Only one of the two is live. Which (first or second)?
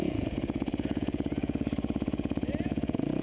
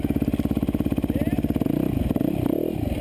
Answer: second